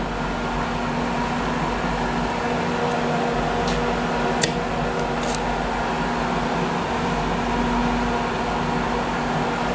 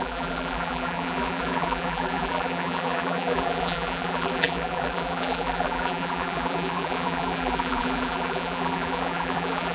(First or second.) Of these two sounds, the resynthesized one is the second